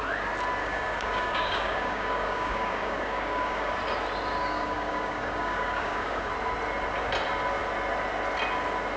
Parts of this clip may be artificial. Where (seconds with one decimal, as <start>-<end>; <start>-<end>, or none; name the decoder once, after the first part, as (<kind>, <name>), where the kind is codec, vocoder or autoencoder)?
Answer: 0.6-3.7 (codec, DAC); 4.4-6.3